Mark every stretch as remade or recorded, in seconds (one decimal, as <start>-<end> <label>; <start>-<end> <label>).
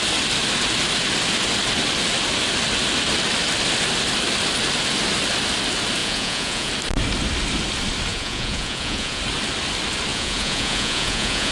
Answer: 0.0-6.0 recorded; 6.0-6.7 remade; 6.7-8.1 recorded; 8.1-9.2 remade; 9.2-10.1 recorded; 10.1-11.5 remade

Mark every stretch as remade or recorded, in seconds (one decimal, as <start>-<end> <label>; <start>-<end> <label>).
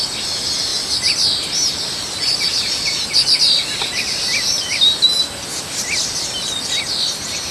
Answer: 0.0-7.5 recorded